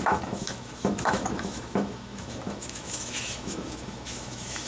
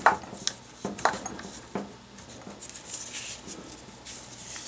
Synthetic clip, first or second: first